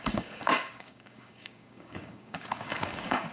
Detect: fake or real fake